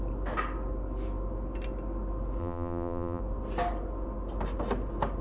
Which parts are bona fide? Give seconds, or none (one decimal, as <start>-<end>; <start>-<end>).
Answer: 0.0-2.4; 3.2-5.2

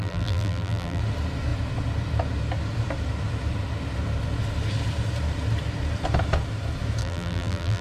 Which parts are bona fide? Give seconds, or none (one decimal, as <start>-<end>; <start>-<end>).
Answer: 1.0-7.0

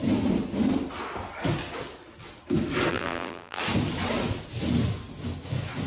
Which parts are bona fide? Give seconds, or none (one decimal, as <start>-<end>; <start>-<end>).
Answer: 0.0-2.9; 3.6-5.9

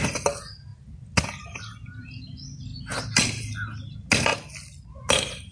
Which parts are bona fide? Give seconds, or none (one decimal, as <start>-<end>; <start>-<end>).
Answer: 0.0-5.5

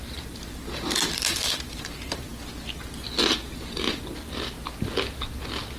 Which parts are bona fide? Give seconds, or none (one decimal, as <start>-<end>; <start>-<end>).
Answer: 2.3-5.8

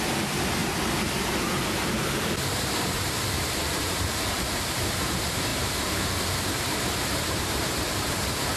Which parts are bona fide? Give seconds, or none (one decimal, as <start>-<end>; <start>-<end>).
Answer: 0.6-3.5